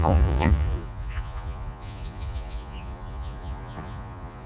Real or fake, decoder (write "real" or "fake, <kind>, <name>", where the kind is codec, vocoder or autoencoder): fake, vocoder, Vocos